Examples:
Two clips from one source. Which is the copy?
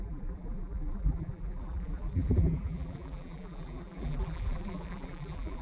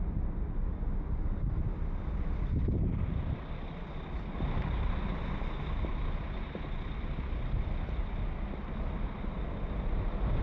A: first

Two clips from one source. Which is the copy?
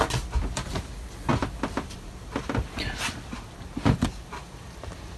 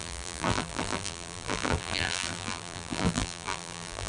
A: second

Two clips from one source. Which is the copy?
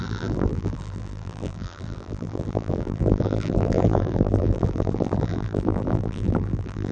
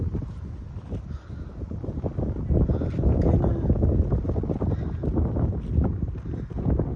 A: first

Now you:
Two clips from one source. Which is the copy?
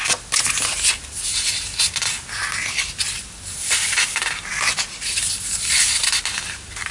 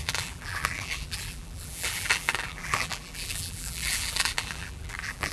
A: second